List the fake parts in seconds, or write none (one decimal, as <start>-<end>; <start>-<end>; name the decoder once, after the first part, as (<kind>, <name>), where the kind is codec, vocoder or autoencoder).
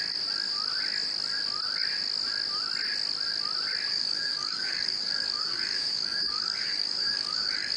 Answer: 3.9-7.8 (codec, DAC)